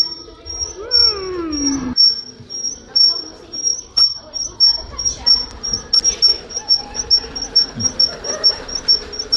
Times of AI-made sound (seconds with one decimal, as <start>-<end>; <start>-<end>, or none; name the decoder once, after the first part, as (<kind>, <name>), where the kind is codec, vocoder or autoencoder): 6.3-7.0 (vocoder, Vocos)